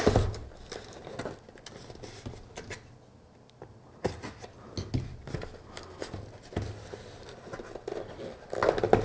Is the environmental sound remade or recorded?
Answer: recorded